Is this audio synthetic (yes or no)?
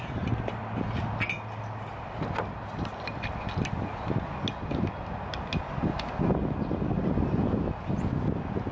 no